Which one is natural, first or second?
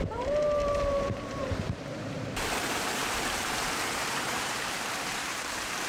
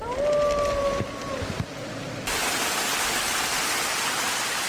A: second